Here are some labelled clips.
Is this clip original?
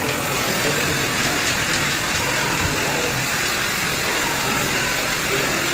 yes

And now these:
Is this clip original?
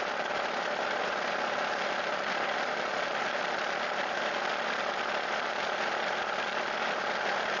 yes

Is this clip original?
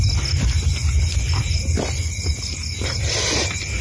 yes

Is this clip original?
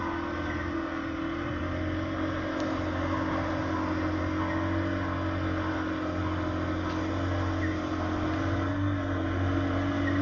yes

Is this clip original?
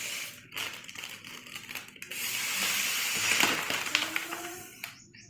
yes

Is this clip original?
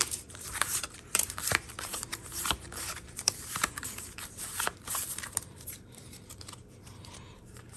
no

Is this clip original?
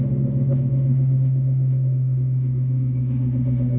no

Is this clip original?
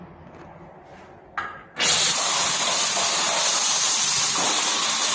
yes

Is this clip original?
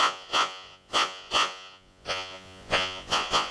no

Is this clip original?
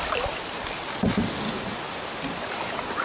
yes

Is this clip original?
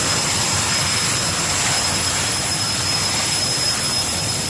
yes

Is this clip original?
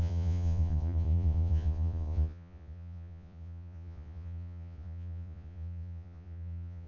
no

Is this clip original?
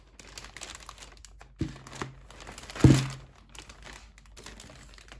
yes